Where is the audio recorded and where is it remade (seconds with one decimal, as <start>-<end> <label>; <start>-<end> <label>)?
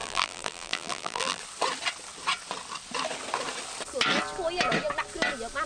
0.0-1.4 remade; 1.4-5.7 recorded